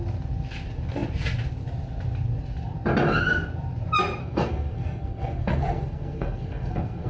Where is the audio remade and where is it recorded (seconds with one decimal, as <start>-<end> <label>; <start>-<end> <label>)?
0.0-4.2 recorded; 4.2-7.1 remade